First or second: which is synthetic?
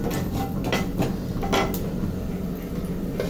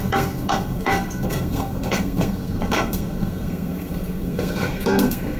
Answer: second